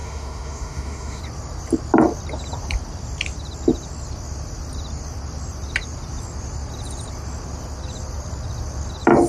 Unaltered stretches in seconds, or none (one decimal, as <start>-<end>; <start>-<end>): 1.2-9.3

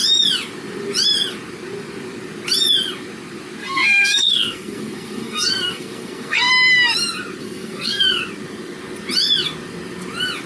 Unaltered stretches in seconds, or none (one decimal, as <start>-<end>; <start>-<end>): 0.0-3.6; 6.5-7.4; 8.2-10.5